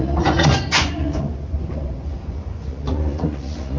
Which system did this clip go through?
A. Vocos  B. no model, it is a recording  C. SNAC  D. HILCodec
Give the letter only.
A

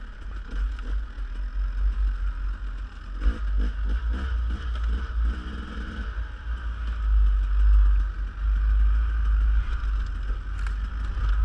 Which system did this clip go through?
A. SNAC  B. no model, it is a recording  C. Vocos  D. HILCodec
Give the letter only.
B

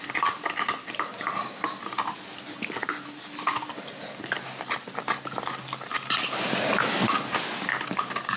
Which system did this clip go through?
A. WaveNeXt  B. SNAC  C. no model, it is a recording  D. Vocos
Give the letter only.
C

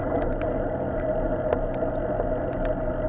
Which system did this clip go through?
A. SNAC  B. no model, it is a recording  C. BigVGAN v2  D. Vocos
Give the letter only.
B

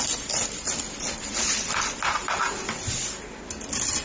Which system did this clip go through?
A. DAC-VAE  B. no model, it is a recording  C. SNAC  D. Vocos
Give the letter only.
B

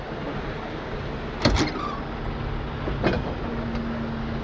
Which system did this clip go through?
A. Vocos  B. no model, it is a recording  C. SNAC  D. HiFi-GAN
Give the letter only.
B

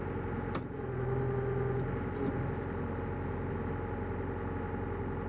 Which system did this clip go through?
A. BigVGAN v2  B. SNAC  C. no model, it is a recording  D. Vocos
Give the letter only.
C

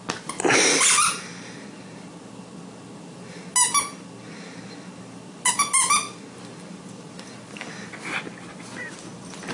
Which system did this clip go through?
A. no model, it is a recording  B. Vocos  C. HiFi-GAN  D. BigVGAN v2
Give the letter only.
A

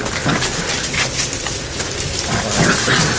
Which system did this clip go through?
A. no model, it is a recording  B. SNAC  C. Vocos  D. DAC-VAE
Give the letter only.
A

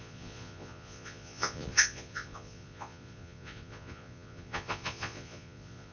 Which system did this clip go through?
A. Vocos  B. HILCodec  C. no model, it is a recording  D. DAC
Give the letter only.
A